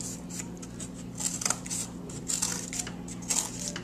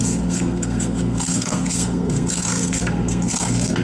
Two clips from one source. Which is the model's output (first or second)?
second